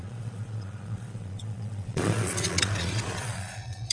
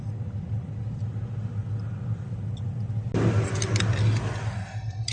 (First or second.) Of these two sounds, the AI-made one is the first